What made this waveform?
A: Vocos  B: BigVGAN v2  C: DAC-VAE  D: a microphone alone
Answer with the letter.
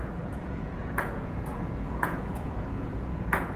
A